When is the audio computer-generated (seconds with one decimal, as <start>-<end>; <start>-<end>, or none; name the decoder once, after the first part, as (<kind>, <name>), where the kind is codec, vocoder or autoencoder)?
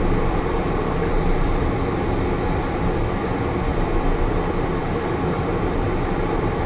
4.8-5.5 (codec, DAC)